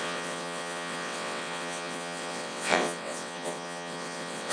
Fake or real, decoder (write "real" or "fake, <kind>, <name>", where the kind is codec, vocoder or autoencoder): fake, vocoder, WaveNeXt